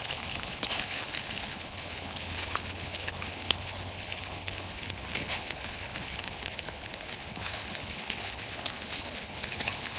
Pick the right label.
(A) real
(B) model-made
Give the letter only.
B